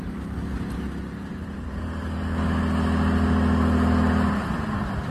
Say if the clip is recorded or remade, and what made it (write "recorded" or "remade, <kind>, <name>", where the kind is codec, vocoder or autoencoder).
recorded